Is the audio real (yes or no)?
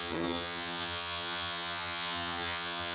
no